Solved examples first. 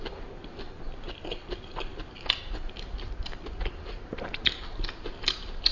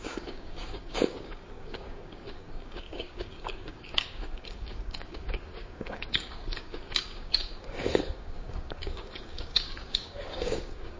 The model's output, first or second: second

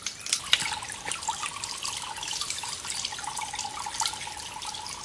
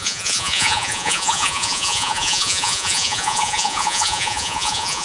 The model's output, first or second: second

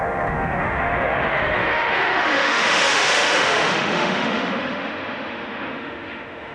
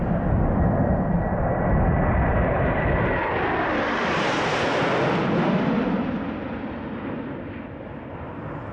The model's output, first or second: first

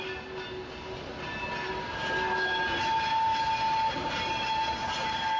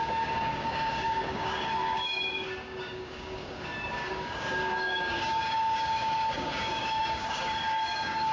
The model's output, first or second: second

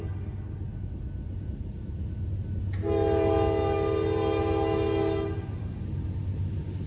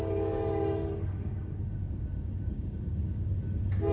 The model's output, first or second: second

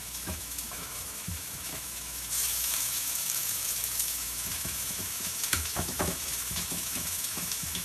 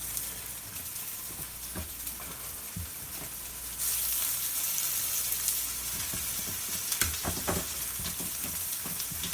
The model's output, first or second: first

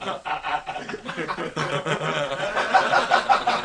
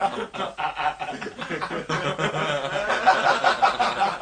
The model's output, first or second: first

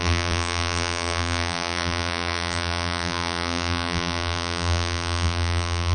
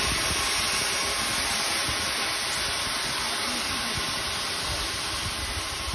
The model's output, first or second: first